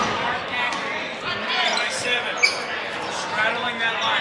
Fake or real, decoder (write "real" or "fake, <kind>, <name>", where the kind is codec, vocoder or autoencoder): real